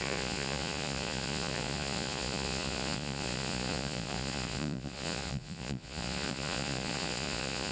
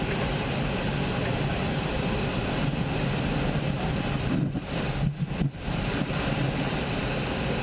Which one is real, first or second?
second